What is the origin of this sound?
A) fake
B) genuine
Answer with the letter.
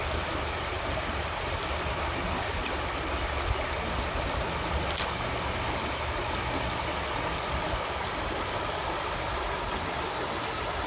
B